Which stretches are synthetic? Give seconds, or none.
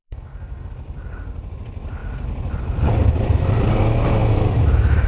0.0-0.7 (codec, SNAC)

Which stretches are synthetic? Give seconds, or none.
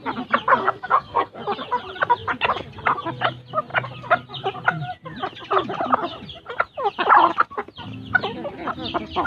0.6-1.4 (codec, SNAC)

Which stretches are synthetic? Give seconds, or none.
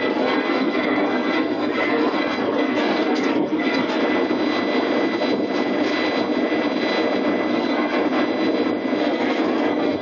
0.0-4.0 (codec, SNAC); 7.5-8.0; 9.0-10.0